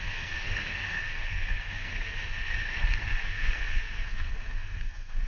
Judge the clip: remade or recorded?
remade